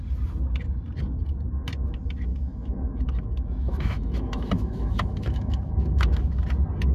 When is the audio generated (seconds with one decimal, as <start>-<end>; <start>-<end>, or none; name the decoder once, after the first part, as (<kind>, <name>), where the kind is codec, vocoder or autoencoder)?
2.3-6.4 (autoencoder, DAC-VAE)